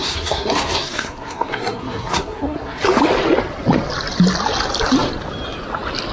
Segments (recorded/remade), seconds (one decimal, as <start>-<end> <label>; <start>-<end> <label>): 0.0-2.8 remade; 2.8-6.1 recorded